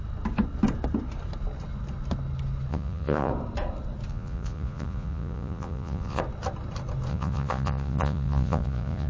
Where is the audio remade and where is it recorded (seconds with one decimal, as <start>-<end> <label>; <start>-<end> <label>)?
0.0-2.7 recorded; 2.7-3.3 remade; 3.3-4.1 recorded; 4.1-6.2 remade; 6.2-7.1 recorded; 7.1-9.1 remade